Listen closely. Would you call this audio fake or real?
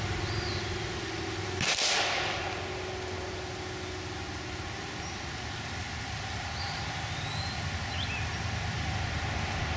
real